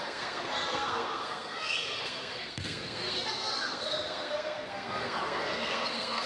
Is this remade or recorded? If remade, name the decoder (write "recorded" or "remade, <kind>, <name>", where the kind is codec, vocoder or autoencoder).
remade, codec, SNAC